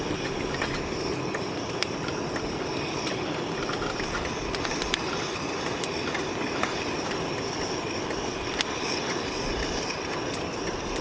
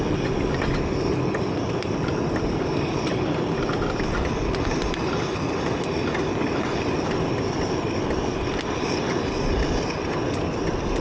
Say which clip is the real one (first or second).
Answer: second